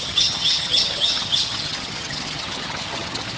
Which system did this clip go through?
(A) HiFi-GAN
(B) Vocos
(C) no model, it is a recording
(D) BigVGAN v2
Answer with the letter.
A